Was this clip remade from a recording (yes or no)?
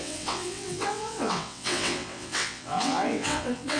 yes